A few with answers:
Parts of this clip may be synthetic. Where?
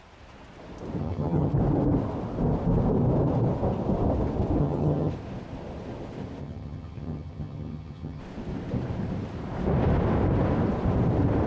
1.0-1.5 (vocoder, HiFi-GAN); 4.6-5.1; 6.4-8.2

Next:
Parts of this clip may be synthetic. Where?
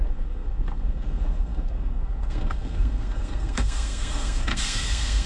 0.0-5.3 (codec, SNAC)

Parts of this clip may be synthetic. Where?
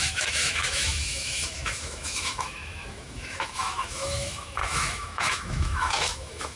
0.0-6.6 (autoencoder, DAC-VAE)